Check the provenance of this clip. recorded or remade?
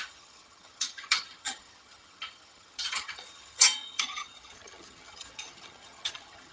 remade